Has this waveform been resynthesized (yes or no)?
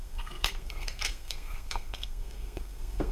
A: yes